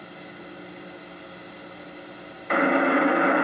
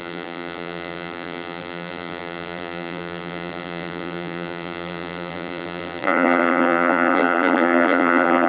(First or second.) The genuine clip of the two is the first